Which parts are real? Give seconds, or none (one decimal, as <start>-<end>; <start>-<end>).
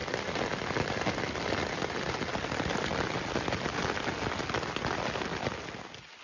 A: 0.0-6.2